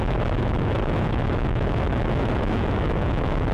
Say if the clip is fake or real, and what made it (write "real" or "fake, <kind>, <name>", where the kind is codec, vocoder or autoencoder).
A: fake, autoencoder, DAC-VAE